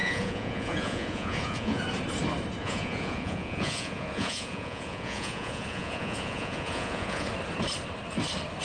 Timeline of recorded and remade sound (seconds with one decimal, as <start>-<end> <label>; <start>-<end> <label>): 0.0-1.8 remade; 1.8-2.6 recorded; 2.6-7.3 remade; 7.3-8.6 recorded